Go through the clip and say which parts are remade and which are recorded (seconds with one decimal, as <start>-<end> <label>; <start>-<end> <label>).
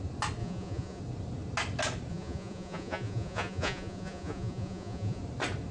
0.0-0.4 recorded; 0.4-1.0 remade; 1.0-2.1 recorded; 2.1-5.2 remade; 5.2-5.7 recorded